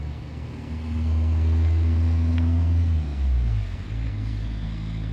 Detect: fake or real fake